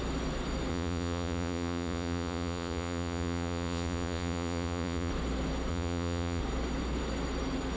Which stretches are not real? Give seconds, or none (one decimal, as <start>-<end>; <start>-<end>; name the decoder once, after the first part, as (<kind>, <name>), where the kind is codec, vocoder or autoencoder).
0.7-5.1 (vocoder, Vocos); 5.7-6.4